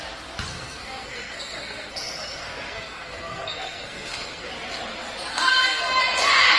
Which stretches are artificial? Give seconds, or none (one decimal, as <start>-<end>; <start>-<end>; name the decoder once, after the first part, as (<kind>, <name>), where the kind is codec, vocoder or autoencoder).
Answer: 0.5-4.5 (codec, SNAC); 5.3-6.0